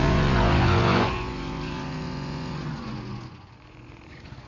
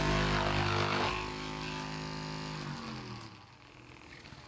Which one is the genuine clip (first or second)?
second